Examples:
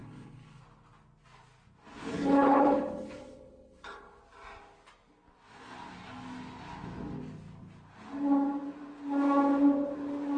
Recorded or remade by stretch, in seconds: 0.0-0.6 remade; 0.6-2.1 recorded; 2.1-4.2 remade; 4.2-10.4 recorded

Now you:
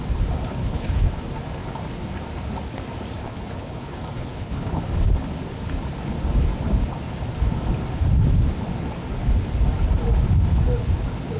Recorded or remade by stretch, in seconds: 0.0-0.6 recorded; 0.6-1.1 remade; 1.1-3.2 recorded; 3.2-4.8 remade; 4.8-11.4 recorded

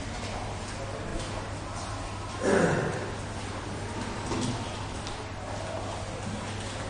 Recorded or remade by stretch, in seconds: 0.0-6.9 recorded